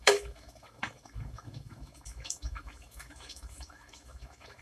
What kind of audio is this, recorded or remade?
remade